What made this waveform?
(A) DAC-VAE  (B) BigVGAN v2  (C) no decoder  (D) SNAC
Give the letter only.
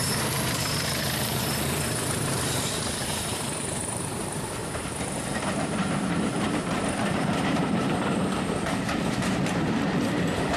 B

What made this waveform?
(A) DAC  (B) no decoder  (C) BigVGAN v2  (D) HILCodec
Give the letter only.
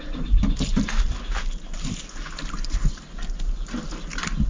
B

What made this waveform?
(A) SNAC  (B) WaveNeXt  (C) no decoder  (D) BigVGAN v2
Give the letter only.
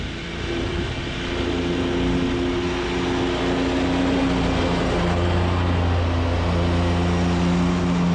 C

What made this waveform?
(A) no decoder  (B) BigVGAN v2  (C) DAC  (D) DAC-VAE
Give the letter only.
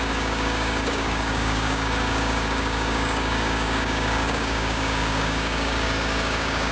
C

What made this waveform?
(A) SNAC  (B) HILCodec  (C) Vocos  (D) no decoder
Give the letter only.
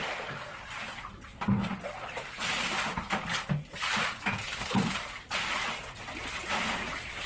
D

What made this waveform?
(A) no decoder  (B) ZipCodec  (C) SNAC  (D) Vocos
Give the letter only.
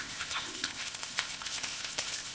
B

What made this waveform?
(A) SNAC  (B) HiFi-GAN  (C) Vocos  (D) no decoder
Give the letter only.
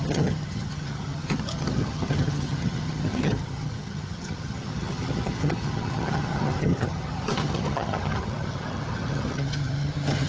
B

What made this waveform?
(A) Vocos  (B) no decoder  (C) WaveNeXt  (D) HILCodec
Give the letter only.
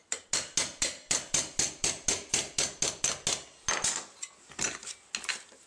B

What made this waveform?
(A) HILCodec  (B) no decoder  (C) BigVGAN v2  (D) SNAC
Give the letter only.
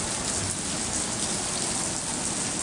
B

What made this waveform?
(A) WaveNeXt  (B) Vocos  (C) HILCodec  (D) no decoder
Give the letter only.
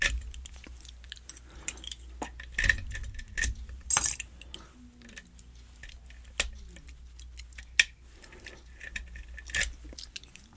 D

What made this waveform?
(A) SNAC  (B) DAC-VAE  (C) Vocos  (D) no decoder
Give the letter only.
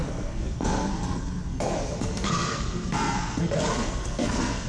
A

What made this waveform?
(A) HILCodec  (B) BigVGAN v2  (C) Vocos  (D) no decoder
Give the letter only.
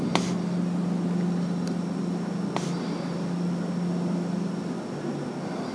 D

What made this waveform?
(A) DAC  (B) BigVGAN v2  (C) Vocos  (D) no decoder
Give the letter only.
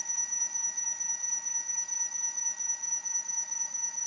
D